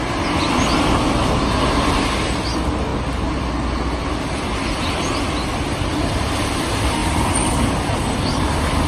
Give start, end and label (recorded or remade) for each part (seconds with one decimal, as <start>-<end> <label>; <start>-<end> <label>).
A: 0.0-8.9 recorded